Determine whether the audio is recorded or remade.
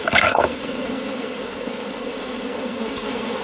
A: remade